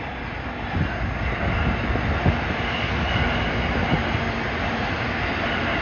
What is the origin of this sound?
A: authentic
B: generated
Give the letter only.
A